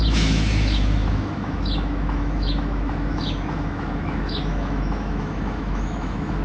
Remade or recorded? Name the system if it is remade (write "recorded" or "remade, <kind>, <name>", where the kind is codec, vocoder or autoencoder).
remade, autoencoder, DAC-VAE